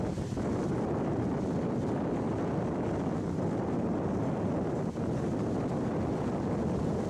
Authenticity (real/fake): real